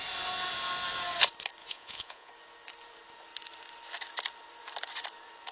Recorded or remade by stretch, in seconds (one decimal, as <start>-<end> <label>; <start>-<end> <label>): 0.0-1.6 recorded; 1.6-2.3 remade; 2.3-5.5 recorded